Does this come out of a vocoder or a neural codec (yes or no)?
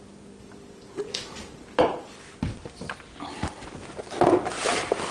no